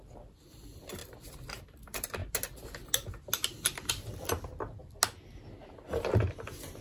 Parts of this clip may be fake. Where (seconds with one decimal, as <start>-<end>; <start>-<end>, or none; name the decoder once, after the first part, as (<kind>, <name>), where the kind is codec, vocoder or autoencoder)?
0.0-2.2 (vocoder, BigVGAN v2); 3.9-4.8; 6.0-6.8